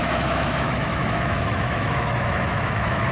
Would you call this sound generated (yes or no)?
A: yes